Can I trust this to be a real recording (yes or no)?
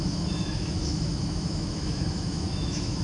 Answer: no